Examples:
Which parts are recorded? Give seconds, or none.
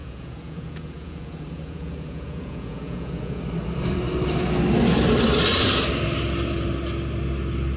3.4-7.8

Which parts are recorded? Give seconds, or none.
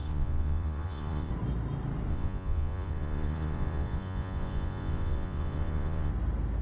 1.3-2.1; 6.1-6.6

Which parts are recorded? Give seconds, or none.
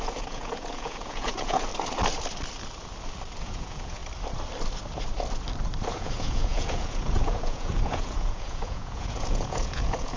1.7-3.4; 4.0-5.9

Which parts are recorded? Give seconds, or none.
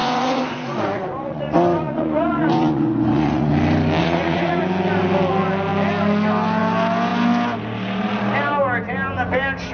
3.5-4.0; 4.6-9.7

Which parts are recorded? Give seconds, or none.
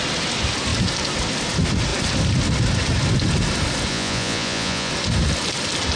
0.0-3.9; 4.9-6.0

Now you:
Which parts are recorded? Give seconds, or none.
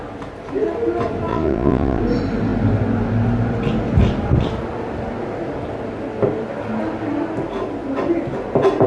0.0-1.3; 2.0-8.9